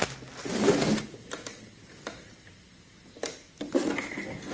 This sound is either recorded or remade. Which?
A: recorded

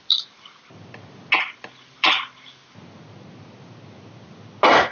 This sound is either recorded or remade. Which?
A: recorded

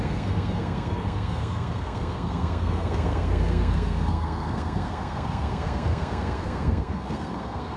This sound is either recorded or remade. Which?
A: remade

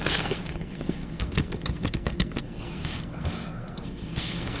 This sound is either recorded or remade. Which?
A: remade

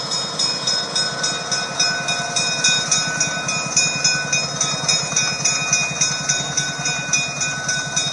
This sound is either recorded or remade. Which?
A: recorded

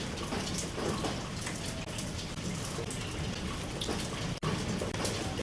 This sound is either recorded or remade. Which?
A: recorded